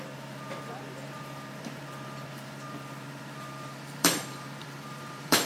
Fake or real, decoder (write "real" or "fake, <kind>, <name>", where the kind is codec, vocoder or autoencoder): fake, vocoder, BigVGAN v2